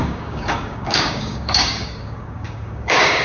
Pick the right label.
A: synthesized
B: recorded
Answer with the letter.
A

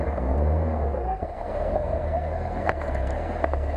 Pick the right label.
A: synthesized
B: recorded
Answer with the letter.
A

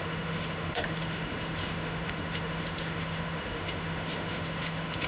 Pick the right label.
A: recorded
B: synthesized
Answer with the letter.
B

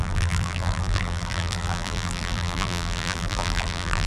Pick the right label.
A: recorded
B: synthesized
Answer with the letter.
B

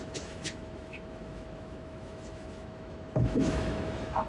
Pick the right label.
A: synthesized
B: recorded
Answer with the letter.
A